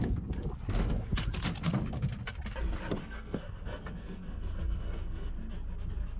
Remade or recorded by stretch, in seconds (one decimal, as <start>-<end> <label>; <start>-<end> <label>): 0.0-3.0 recorded; 3.0-5.3 remade; 5.3-6.2 recorded